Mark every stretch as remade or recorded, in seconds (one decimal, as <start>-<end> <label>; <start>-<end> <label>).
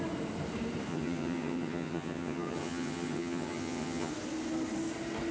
0.0-0.9 recorded; 0.9-4.1 remade; 4.1-5.3 recorded